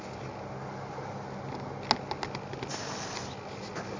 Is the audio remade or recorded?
recorded